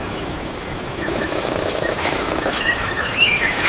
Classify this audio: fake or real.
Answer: fake